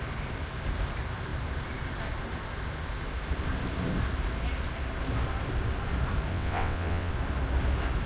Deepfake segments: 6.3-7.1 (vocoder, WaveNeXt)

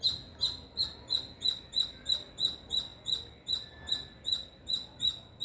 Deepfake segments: none

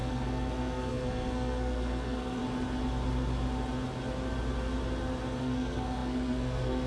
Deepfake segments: 0.0-2.4 (codec, SNAC); 5.4-6.9

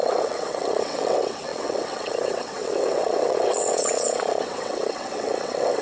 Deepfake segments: 0.0-5.8 (vocoder, WaveNeXt)

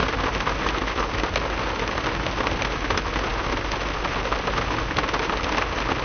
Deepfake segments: none